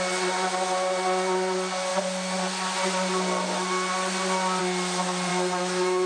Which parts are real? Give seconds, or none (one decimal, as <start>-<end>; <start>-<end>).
0.0-5.3